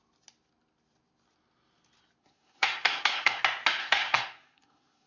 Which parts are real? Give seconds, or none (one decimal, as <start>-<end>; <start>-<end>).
0.0-2.2; 3.4-3.8